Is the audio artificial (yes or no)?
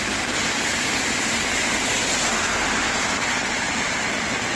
no